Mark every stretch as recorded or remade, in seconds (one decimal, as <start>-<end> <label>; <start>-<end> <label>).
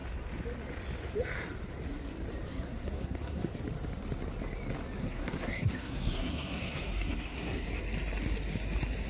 0.0-2.5 recorded; 2.5-3.5 remade; 3.5-5.0 recorded; 5.0-7.7 remade; 7.7-9.1 recorded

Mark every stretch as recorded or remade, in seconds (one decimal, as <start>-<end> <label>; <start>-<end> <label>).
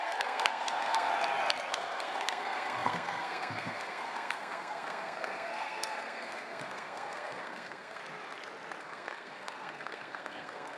0.0-1.1 remade; 1.1-1.7 recorded; 1.7-8.0 remade; 8.0-8.8 recorded; 8.8-10.8 remade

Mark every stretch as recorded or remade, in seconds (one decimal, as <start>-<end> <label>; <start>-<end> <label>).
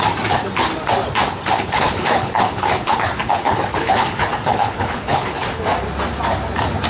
0.0-1.5 recorded; 1.5-5.6 remade; 5.6-6.9 recorded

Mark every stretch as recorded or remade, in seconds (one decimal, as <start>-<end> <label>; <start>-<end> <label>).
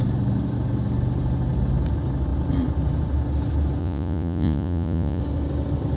0.0-3.8 recorded; 3.8-5.2 remade; 5.2-6.0 recorded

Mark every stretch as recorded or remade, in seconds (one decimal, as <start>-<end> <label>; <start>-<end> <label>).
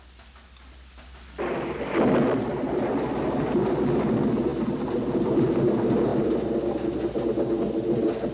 0.0-8.3 recorded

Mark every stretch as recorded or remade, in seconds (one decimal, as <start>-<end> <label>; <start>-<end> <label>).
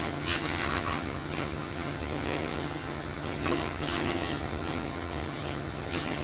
0.0-6.2 remade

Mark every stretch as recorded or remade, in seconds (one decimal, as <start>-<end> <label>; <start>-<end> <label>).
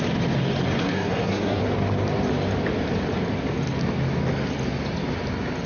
0.0-0.8 recorded; 0.8-1.6 remade; 1.6-5.7 recorded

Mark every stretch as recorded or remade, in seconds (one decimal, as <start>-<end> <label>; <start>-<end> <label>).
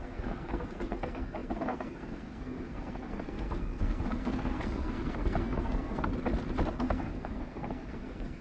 0.0-6.1 remade; 6.1-6.7 recorded; 6.7-8.4 remade